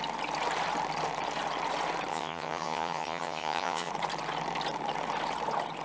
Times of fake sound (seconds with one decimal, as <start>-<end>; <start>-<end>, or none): 2.1-3.9